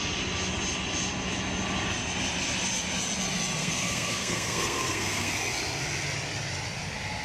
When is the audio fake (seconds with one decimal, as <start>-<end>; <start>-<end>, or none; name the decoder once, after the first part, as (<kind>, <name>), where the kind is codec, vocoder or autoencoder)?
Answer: 3.6-5.3 (codec, SNAC)